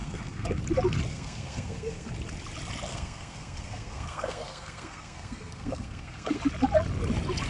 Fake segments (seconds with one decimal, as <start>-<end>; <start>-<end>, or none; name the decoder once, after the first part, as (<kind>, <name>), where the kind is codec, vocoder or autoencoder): 0.0-0.6 (codec, SNAC); 1.1-2.1; 2.9-6.4